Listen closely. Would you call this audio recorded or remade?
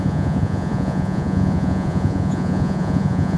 remade